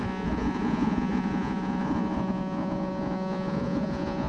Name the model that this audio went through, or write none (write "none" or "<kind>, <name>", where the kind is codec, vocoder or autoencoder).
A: vocoder, Vocos